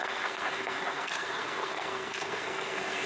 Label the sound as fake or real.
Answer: fake